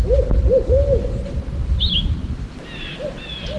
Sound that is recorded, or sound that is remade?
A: recorded